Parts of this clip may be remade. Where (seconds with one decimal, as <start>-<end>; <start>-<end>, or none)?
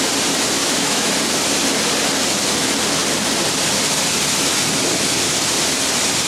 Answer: 0.6-1.1